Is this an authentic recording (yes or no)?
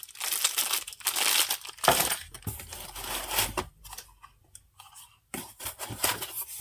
yes